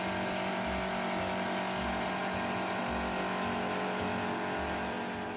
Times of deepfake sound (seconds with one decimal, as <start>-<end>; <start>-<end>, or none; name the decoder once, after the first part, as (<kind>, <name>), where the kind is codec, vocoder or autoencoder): none